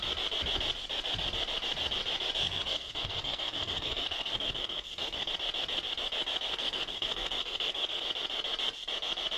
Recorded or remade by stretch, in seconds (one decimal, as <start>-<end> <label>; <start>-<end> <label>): 0.0-2.4 recorded; 2.4-5.3 remade; 5.3-6.5 recorded; 6.5-8.0 remade; 8.0-9.4 recorded